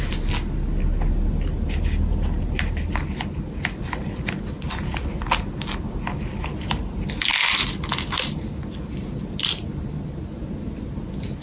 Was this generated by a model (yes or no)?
no